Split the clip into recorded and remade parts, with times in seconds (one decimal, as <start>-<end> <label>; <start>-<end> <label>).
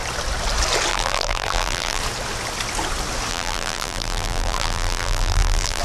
0.0-0.9 recorded; 0.9-2.0 remade; 2.0-3.3 recorded; 3.3-5.8 remade